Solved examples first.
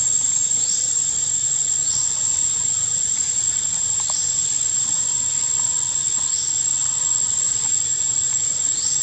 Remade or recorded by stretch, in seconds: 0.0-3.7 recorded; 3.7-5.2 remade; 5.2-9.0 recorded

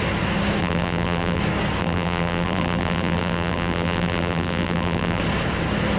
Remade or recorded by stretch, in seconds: 0.0-0.6 recorded; 0.6-1.4 remade; 1.4-1.8 recorded; 1.8-5.2 remade; 5.2-6.0 recorded

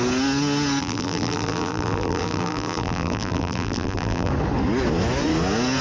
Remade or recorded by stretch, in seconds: 0.0-0.8 recorded; 0.8-4.3 remade; 4.3-5.8 recorded

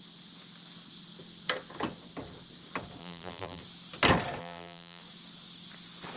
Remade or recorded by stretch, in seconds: 0.0-3.0 recorded; 3.0-3.6 remade; 3.6-4.4 recorded; 4.4-5.0 remade; 5.0-6.2 recorded

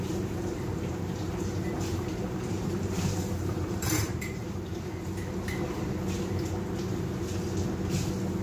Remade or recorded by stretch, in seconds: 0.0-4.7 remade; 4.7-8.4 recorded

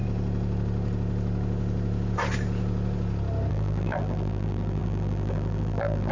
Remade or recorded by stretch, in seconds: 0.0-3.5 recorded; 3.5-6.1 remade

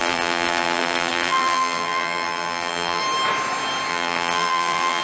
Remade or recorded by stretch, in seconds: 0.0-3.0 remade; 3.0-3.9 recorded; 3.9-5.0 remade

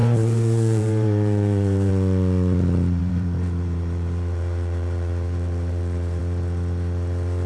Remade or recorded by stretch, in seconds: 0.0-1.9 remade; 1.9-3.0 recorded; 3.0-6.2 remade; 6.2-7.5 recorded